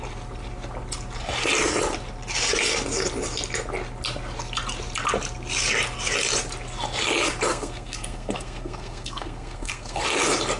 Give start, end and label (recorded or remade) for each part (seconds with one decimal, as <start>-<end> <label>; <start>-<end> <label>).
0.0-7.5 recorded; 7.5-10.0 remade; 10.0-10.6 recorded